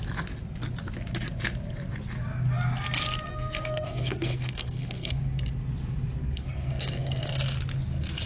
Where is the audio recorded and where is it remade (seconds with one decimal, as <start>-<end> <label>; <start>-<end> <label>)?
0.0-3.3 recorded; 3.3-5.2 remade; 5.2-6.2 recorded; 6.2-7.2 remade; 7.2-8.3 recorded